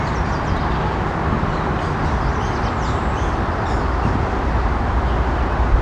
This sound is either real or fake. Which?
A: real